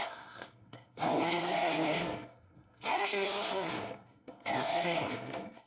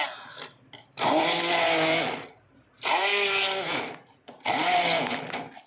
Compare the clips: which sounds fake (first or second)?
first